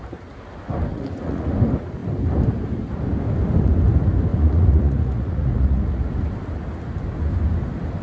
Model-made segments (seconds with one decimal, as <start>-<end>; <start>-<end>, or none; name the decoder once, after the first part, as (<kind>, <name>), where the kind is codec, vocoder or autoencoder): 0.9-1.5 (vocoder, Vocos); 4.3-6.0